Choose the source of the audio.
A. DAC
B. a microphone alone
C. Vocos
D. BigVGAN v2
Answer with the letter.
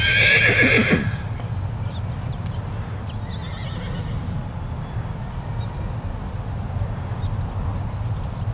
B